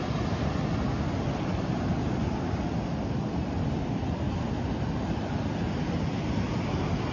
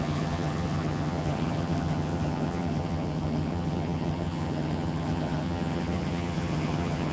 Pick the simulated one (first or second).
second